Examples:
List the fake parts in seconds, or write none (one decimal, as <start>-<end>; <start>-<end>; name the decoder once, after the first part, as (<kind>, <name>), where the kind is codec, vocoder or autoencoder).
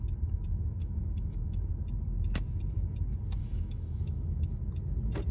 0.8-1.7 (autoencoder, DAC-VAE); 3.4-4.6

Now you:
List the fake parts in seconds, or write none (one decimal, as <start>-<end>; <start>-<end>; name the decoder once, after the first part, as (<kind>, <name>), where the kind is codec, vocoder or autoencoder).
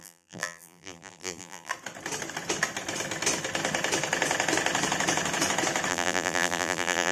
0.0-1.7 (vocoder, BigVGAN v2); 5.9-7.1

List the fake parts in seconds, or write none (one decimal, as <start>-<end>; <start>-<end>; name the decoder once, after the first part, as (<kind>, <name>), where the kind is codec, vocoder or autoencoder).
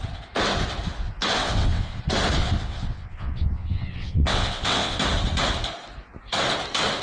1.4-2.0 (vocoder, WaveNeXt); 2.4-5.0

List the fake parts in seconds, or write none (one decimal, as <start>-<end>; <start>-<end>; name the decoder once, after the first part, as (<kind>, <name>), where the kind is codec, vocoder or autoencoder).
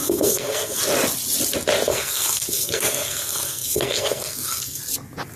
0.0-0.8 (codec, SNAC); 1.9-4.8